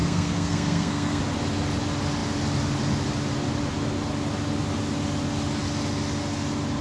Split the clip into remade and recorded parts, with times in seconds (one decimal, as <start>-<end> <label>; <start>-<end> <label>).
0.0-1.2 remade; 1.2-6.8 recorded